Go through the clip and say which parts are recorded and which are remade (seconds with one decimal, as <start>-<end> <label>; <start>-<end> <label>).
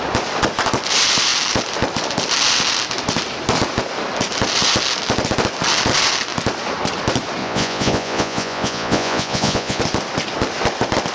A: 0.0-7.4 recorded; 7.4-9.8 remade; 9.8-11.1 recorded